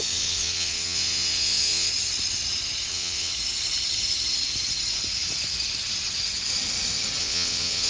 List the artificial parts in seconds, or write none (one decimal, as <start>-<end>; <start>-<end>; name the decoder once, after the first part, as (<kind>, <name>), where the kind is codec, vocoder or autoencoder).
0.0-1.9 (vocoder, WaveNeXt); 2.9-3.3; 7.2-7.9